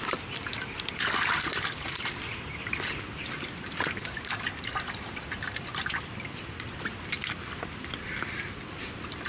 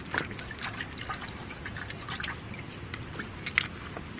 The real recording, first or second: second